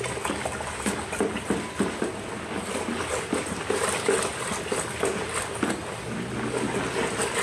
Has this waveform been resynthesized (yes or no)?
no